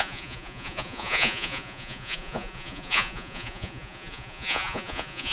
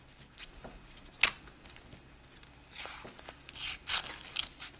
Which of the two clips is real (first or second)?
second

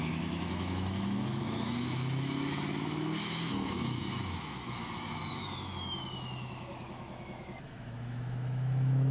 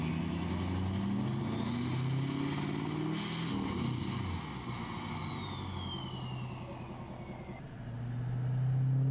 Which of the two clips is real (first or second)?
second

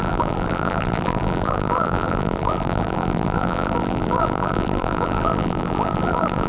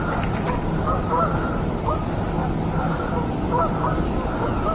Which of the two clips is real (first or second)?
second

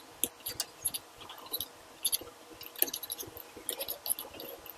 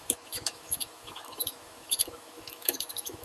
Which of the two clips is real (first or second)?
first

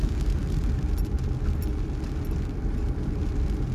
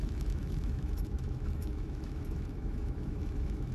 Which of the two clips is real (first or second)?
first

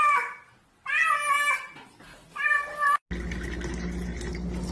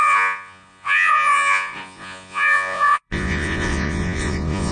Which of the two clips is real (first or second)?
first